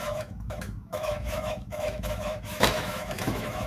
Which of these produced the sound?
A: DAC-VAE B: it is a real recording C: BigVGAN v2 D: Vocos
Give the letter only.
A